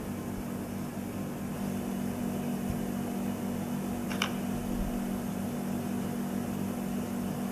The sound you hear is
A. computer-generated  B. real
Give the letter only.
B